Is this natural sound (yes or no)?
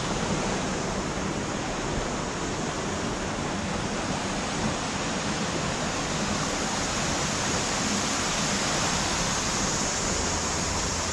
yes